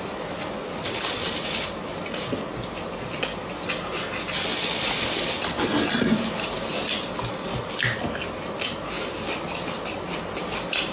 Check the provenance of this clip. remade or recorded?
recorded